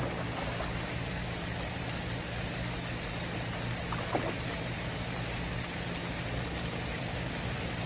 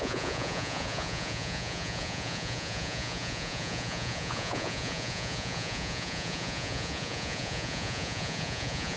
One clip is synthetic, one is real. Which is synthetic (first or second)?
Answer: second